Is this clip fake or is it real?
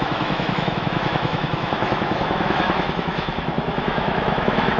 fake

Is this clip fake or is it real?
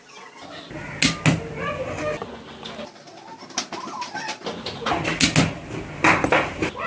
real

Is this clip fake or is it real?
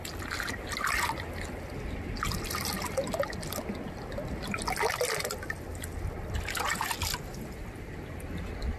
real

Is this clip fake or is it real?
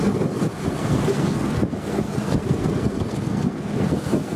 fake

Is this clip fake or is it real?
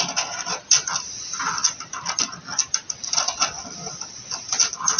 real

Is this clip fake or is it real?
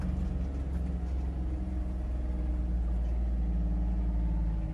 real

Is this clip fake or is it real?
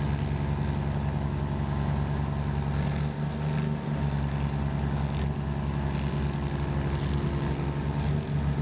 real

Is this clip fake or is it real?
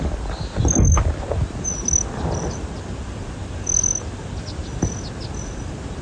real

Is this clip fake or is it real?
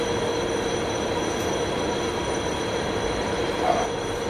real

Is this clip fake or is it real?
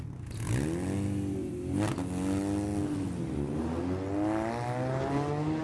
real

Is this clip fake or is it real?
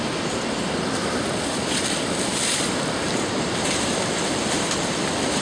real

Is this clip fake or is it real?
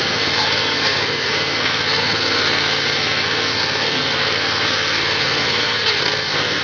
fake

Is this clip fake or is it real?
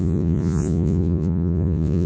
fake